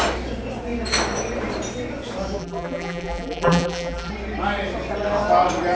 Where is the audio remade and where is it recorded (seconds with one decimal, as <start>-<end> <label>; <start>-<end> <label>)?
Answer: 0.0-2.4 recorded; 2.4-4.1 remade; 4.1-5.7 recorded